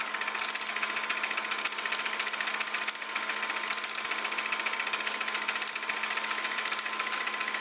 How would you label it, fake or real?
real